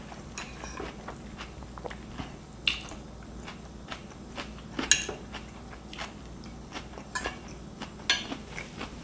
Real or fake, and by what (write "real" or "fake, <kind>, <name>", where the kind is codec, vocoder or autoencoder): real